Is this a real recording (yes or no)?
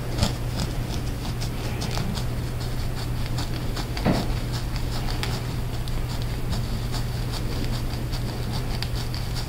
yes